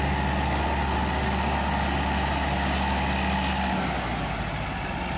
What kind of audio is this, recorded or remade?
recorded